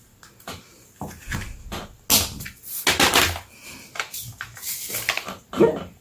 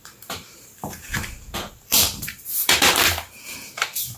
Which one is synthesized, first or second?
second